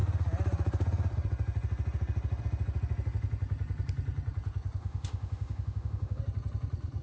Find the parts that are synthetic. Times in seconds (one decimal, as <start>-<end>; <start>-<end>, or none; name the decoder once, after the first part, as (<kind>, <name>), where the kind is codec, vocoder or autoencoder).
4.8-6.2 (autoencoder, DAC-VAE)